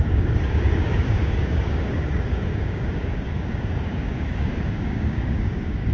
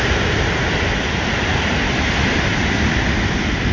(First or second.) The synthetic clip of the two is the first